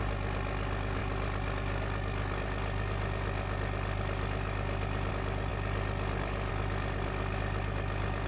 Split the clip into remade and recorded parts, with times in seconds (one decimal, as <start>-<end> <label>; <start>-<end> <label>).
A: 0.0-8.3 recorded